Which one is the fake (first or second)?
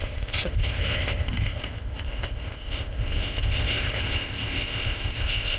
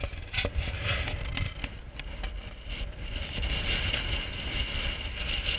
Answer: first